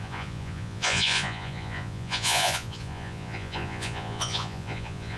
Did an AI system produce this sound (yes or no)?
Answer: yes